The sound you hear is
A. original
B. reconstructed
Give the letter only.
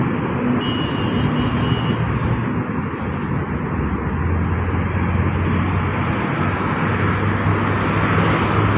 A